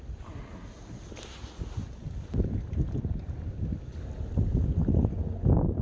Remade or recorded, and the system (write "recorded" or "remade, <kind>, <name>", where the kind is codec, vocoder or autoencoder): recorded